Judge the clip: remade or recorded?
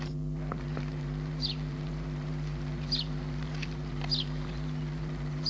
remade